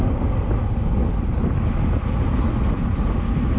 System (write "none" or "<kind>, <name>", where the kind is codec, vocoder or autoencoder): none